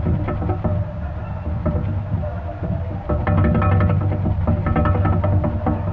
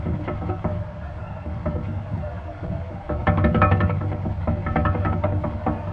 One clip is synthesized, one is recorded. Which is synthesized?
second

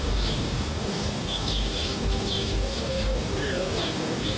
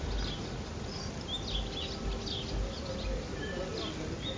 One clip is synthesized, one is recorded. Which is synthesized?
first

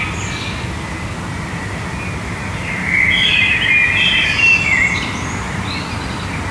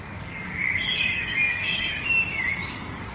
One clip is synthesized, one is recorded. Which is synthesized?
second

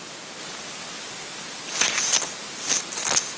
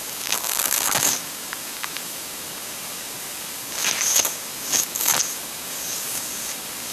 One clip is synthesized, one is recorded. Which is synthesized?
second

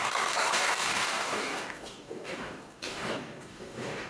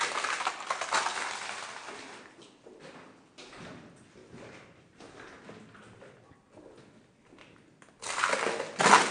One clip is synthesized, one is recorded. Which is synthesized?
first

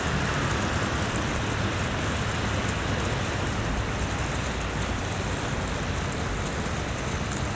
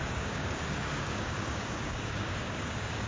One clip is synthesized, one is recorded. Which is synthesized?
second